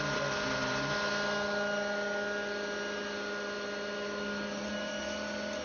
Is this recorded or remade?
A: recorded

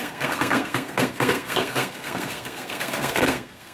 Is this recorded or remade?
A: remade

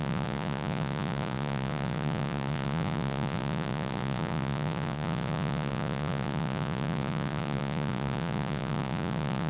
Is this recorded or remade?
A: remade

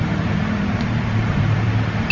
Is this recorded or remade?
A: remade